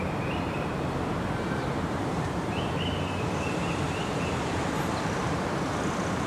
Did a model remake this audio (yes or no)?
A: yes